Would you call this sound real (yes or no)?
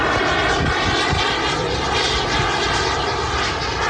yes